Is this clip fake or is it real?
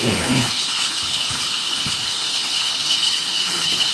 fake